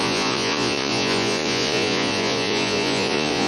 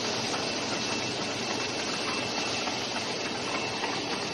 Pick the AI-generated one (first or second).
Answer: first